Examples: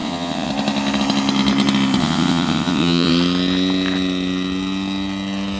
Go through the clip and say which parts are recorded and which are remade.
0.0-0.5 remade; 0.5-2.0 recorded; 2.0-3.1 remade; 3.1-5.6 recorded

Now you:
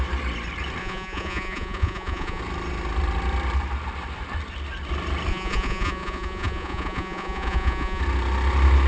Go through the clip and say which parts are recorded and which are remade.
0.0-0.8 recorded; 0.8-2.4 remade; 2.4-5.3 recorded; 5.3-8.0 remade; 8.0-8.9 recorded

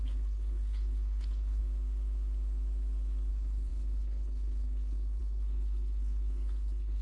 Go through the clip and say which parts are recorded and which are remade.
0.0-1.6 remade; 1.6-3.3 recorded; 3.3-7.0 remade

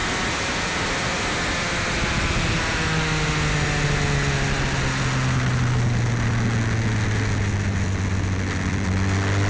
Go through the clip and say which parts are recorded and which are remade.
0.0-9.5 recorded